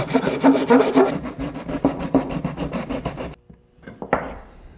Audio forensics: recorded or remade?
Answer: remade